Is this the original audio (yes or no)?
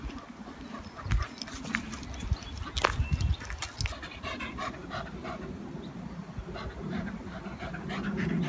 yes